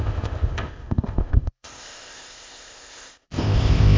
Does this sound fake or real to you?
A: fake